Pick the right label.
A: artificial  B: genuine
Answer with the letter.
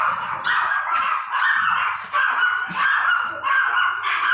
B